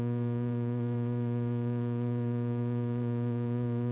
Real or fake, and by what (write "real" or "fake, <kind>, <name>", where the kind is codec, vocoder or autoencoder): fake, vocoder, BigVGAN v2